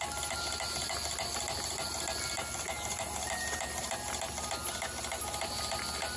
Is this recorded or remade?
recorded